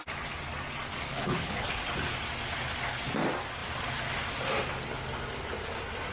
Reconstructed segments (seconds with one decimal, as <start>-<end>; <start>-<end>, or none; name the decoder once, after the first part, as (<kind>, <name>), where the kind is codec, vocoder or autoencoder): 1.1-1.8 (codec, HILCodec)